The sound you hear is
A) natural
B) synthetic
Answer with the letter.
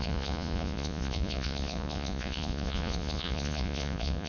B